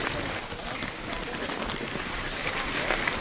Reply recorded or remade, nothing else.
recorded